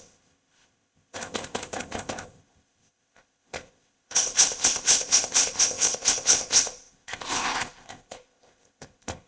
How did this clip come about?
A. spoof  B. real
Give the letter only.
A